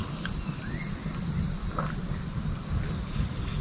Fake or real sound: real